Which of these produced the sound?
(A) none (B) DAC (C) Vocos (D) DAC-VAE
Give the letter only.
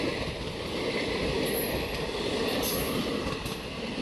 A